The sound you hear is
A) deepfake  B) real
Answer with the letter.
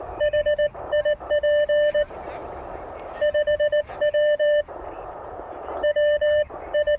A